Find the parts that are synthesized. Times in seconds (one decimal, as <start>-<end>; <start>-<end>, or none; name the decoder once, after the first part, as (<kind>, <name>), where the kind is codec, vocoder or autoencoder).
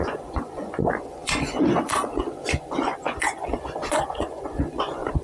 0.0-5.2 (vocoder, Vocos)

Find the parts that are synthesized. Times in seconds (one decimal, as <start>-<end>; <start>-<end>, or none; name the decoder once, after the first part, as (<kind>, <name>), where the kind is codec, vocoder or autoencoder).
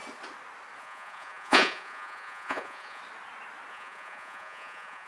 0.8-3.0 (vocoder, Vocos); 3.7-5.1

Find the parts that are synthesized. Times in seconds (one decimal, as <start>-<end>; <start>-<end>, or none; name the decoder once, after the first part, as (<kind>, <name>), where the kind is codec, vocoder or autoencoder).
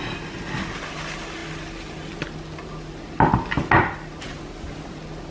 none